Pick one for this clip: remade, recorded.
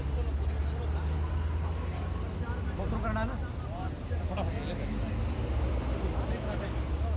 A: recorded